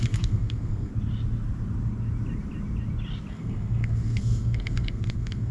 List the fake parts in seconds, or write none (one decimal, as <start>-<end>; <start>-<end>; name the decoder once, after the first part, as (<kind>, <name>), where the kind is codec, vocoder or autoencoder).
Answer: 0.0-0.9 (codec, SNAC); 3.3-5.5